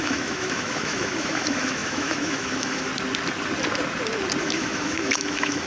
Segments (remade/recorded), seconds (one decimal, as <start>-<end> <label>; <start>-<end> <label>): 0.0-2.9 remade; 2.9-4.4 recorded; 4.4-5.7 remade